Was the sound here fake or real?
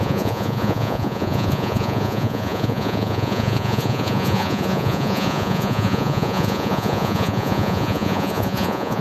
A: fake